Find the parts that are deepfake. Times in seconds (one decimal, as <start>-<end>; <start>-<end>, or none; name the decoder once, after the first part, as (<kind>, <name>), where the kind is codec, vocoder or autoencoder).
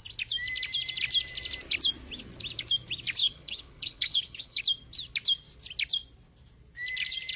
3.2-4.6 (codec, HILCodec)